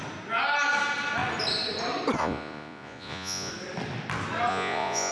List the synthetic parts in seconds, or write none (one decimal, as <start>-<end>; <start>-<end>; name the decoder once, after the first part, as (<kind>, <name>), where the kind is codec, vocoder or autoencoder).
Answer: 2.2-3.5 (vocoder, Vocos); 4.5-5.1

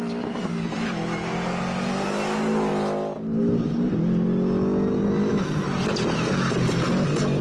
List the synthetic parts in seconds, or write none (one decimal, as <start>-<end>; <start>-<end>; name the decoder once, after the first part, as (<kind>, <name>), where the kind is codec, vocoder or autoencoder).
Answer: none

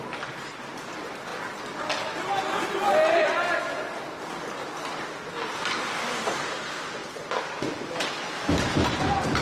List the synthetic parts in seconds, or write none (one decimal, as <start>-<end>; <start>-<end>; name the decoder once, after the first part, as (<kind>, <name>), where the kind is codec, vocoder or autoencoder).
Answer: 0.0-1.3 (vocoder, BigVGAN v2); 6.6-9.4

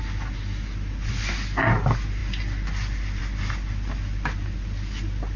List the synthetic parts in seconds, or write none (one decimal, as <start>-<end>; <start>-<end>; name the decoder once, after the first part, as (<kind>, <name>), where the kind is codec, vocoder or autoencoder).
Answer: none